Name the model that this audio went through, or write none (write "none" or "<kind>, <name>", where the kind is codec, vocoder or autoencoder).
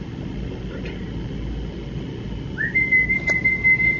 none